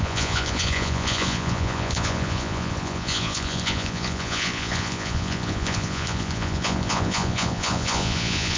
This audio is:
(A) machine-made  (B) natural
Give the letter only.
A